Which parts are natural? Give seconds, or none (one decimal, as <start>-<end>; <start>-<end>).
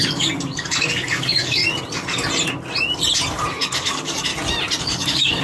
1.6-3.5; 4.3-4.8